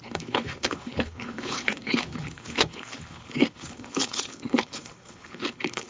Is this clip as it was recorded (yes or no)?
no